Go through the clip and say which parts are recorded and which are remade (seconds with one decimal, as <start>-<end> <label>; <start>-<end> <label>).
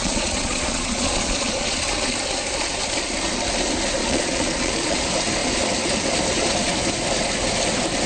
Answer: 0.0-1.8 remade; 1.8-4.0 recorded; 4.0-5.0 remade; 5.0-8.1 recorded